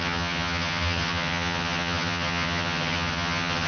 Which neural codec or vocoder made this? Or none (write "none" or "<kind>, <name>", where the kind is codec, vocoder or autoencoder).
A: vocoder, HiFi-GAN